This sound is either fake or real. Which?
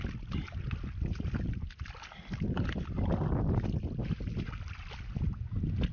real